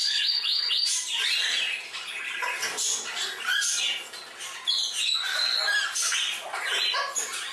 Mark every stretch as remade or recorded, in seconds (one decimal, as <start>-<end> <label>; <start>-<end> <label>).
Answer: 0.0-0.8 remade; 0.8-7.5 recorded